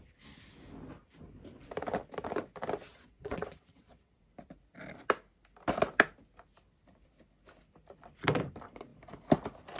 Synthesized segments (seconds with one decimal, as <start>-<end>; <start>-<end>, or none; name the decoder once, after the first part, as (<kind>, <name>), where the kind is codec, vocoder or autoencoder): 2.9-4.2 (vocoder, Vocos)